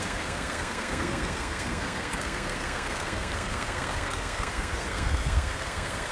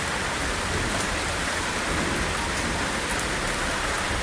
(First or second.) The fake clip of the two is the first